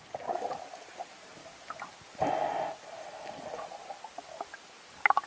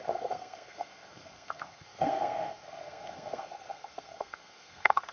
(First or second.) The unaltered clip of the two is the first